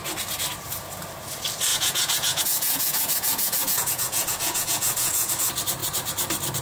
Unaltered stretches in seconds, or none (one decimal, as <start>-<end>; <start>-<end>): 0.0-1.7; 5.3-6.6